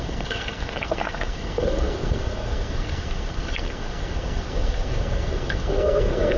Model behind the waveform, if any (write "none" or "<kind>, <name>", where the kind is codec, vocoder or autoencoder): codec, SNAC